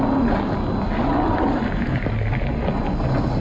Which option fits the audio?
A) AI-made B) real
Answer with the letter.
B